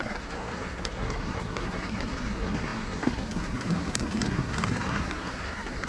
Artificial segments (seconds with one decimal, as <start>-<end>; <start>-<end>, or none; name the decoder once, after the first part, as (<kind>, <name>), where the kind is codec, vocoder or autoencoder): 0.0-5.9 (codec, SNAC)